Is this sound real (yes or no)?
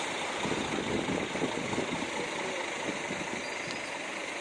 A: yes